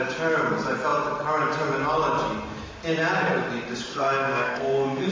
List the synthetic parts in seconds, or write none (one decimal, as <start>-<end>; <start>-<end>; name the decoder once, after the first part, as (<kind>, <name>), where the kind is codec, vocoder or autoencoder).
3.9-5.1 (codec, SNAC)